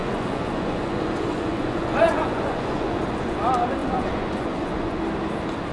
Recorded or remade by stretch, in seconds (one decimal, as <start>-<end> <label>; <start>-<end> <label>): 0.0-3.4 remade; 3.4-3.8 recorded; 3.8-5.0 remade; 5.0-5.7 recorded